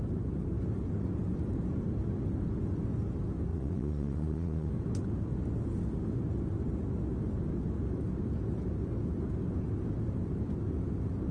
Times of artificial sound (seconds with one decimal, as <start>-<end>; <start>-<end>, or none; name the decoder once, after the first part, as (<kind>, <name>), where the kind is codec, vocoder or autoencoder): 3.5-4.7 (vocoder, Vocos)